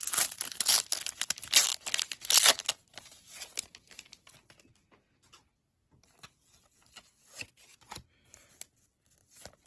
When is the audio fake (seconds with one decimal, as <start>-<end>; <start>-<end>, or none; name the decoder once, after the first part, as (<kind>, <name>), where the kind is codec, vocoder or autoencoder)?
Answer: none